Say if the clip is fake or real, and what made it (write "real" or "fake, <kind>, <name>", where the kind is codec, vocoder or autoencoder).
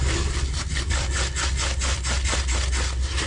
real